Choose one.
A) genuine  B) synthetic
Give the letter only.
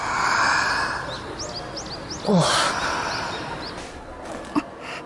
A